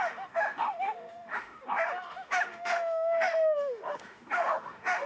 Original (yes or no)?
no